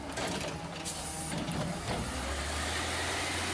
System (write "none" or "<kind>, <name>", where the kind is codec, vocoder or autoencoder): none